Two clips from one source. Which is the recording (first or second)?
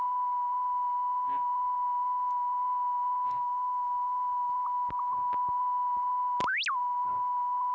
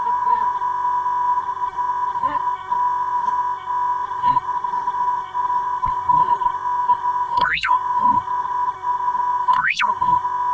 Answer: first